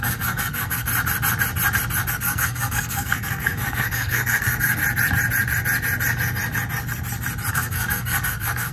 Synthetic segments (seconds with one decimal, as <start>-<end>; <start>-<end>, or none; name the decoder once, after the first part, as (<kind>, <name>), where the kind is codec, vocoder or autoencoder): 0.0-0.9 (codec, SNAC); 2.1-4.8; 7.5-8.7